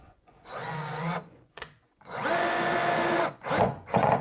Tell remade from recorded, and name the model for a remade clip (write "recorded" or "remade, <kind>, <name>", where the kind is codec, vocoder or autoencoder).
remade, vocoder, Vocos